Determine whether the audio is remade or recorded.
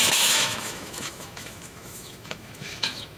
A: remade